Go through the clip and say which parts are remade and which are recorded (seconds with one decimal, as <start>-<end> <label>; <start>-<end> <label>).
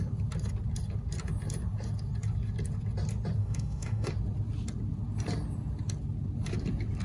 0.0-3.4 recorded; 3.4-4.1 remade; 4.1-7.0 recorded